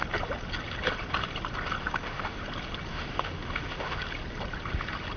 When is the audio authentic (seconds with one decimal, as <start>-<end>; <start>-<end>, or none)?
0.0-1.8; 2.4-2.9; 4.0-5.2